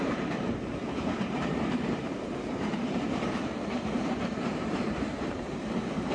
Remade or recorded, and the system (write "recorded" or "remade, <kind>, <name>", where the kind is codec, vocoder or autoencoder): remade, vocoder, BigVGAN v2